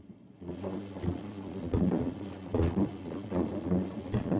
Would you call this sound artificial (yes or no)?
yes